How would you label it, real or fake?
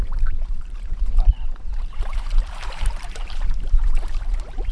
fake